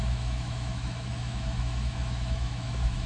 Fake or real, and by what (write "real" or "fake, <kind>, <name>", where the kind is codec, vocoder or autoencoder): fake, autoencoder, DAC-VAE